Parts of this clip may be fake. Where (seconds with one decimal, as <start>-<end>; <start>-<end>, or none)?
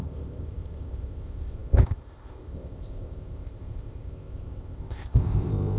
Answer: 0.0-5.8